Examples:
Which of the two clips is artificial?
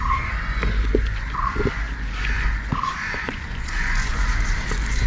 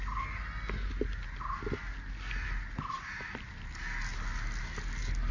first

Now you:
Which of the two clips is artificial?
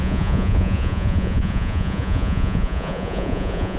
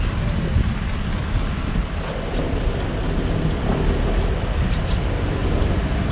first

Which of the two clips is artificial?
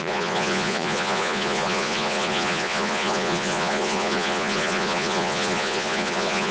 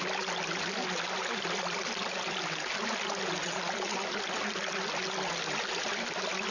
first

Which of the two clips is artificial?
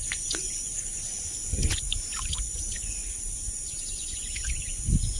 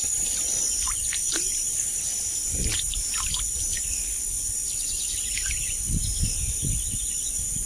first